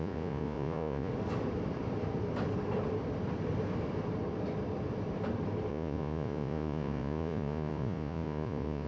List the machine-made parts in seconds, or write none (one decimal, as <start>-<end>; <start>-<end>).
0.0-1.1; 5.7-8.9